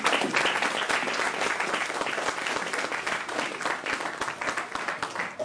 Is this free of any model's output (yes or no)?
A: yes